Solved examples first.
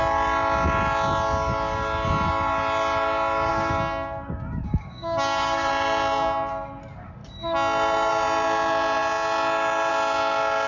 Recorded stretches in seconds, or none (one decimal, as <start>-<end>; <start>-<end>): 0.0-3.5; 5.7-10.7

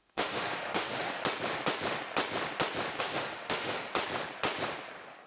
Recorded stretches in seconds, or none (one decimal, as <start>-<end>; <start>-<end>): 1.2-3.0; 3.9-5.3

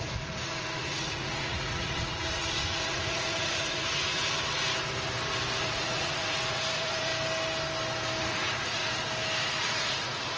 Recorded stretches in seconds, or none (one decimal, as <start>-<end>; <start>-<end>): 4.2-5.6; 7.1-8.2; 8.8-9.6

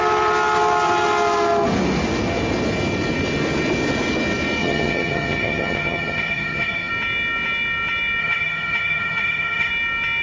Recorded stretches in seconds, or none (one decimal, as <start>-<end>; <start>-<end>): 0.0-4.6; 6.9-8.2; 9.7-10.2

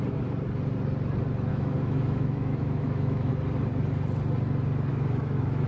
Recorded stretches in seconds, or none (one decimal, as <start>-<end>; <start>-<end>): 0.0-1.5; 3.3-4.9

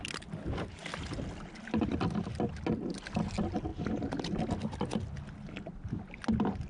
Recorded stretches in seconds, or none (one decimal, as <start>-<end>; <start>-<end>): 0.0-6.7

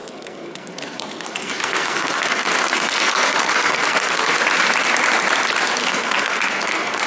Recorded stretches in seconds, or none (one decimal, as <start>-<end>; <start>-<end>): 4.3-5.8

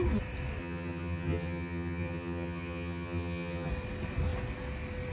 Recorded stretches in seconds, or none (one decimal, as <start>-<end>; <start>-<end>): 0.0-0.6; 3.7-5.1